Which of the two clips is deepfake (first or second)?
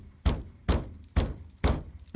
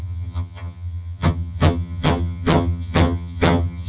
second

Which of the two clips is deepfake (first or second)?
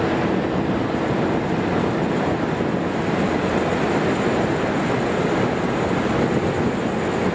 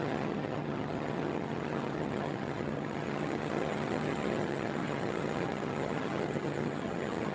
second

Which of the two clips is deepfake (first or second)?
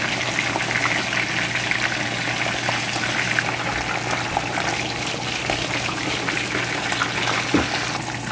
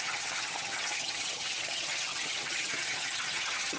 second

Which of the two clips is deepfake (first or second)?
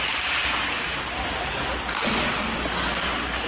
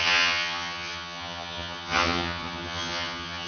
second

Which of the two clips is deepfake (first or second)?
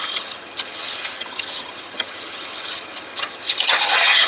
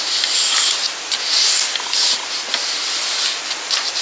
first